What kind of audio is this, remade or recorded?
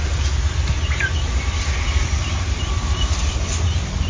remade